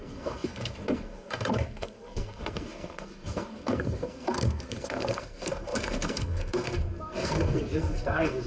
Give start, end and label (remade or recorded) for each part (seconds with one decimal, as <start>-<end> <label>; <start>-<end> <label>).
0.0-8.5 remade